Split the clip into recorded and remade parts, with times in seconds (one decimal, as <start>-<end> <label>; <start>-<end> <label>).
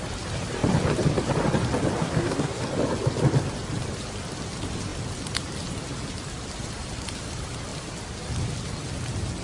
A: 0.0-2.0 recorded; 2.0-2.6 remade; 2.6-9.4 recorded